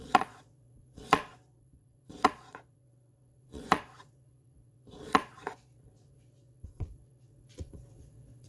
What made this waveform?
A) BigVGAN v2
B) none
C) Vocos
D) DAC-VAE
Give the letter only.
C